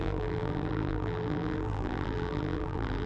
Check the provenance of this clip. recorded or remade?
remade